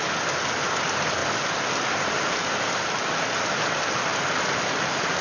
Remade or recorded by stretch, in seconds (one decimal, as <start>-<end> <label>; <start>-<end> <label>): 0.0-5.2 recorded